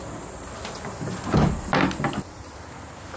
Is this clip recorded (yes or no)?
yes